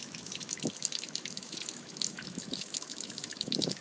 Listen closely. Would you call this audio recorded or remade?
remade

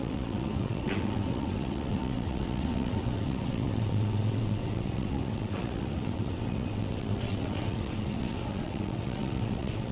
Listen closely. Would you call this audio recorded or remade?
remade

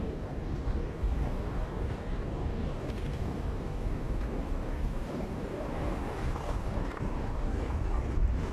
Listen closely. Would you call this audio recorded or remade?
remade